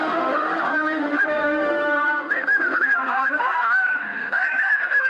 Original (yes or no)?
no